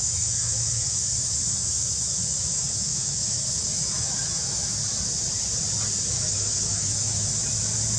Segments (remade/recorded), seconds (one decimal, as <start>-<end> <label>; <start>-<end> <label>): 0.0-4.8 remade; 4.8-6.1 recorded; 6.1-7.3 remade; 7.3-8.0 recorded